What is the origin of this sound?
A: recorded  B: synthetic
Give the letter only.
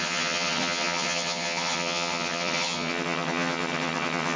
B